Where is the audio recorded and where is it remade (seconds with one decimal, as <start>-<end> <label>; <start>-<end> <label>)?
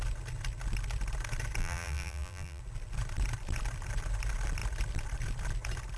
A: 0.0-1.6 recorded; 1.6-2.6 remade; 2.6-6.0 recorded